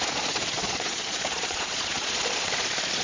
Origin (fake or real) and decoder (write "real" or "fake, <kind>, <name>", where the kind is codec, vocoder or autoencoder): fake, vocoder, Vocos